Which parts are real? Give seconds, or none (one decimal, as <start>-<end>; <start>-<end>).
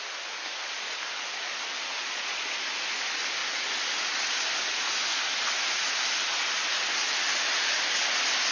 0.0-2.0; 2.6-8.5